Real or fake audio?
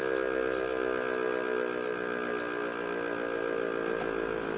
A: real